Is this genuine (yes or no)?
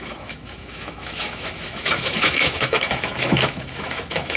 no